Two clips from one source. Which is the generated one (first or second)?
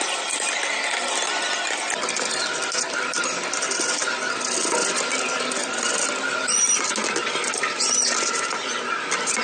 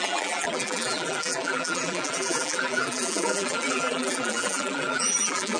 second